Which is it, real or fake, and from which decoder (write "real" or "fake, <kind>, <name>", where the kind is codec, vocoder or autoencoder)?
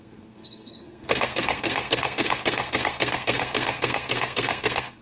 fake, codec, SNAC